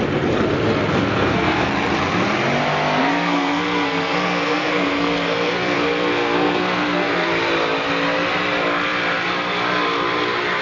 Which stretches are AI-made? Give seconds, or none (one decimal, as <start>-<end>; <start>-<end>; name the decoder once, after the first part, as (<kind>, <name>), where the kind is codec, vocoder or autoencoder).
0.9-1.7 (codec, SNAC); 3.0-7.3